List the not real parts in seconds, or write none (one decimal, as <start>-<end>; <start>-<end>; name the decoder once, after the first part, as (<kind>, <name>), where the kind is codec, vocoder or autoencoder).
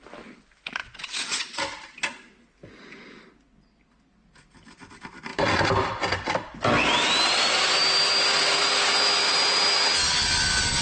0.8-1.6 (vocoder, Vocos)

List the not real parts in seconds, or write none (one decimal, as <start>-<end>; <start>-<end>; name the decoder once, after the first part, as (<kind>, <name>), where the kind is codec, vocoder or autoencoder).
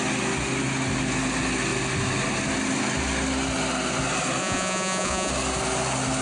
4.4-5.3 (vocoder, Vocos)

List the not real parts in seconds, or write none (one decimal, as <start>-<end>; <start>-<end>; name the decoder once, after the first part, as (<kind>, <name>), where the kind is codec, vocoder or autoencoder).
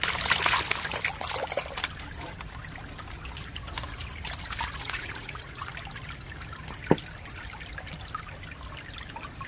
4.8-5.7 (vocoder, Vocos)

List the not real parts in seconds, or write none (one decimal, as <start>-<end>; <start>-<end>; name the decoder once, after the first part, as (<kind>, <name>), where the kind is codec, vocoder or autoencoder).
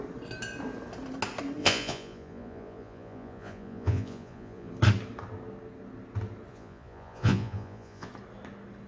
1.6-4.7 (vocoder, Vocos); 6.5-8.1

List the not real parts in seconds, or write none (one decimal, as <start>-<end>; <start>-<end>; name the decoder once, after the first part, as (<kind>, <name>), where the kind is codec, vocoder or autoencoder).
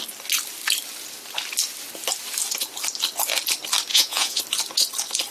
3.9-4.4 (vocoder, Vocos)